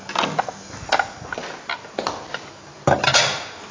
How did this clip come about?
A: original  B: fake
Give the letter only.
A